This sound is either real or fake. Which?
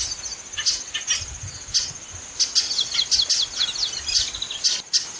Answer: real